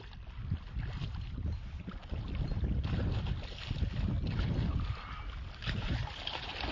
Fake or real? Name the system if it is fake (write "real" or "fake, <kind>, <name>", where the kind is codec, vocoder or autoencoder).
real